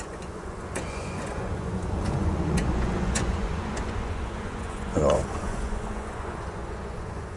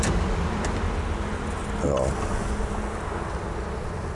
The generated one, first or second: first